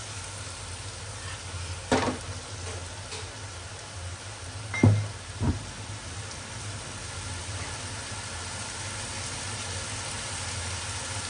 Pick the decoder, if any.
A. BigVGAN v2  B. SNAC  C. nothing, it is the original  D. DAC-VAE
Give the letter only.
C